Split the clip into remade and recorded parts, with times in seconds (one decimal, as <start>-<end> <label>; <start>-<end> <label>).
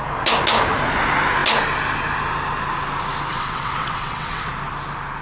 0.0-3.3 recorded; 3.3-4.5 remade; 4.5-5.2 recorded